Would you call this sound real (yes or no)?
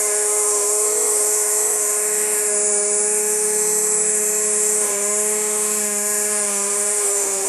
no